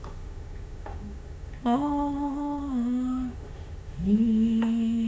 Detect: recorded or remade remade